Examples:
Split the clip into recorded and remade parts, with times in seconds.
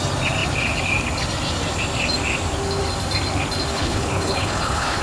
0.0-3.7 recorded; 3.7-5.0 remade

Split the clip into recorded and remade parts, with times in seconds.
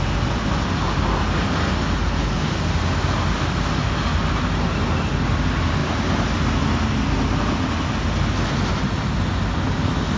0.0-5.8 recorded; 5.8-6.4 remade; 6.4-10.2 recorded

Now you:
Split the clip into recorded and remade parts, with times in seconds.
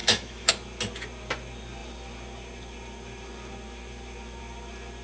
0.0-0.5 remade; 0.5-5.0 recorded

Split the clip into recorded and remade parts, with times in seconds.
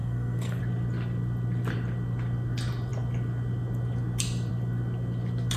0.0-0.6 remade; 0.6-5.6 recorded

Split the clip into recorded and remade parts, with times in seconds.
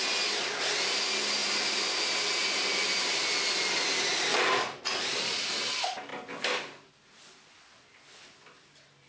0.0-1.4 recorded; 1.4-3.1 remade; 3.1-4.1 recorded; 4.1-5.5 remade; 5.5-6.1 recorded; 6.1-6.9 remade; 6.9-9.1 recorded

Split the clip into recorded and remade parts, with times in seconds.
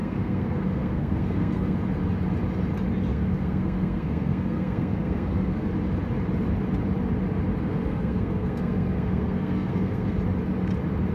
0.0-1.8 remade; 1.8-3.1 recorded; 3.1-5.7 remade; 5.7-7.7 recorded; 7.7-10.2 remade; 10.2-11.1 recorded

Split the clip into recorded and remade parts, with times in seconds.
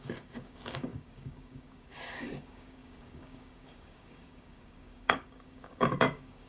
0.0-6.5 remade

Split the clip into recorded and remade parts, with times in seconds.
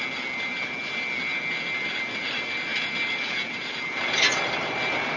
0.0-5.2 recorded